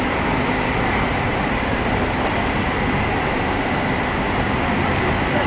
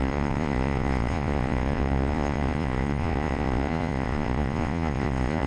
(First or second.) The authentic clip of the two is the first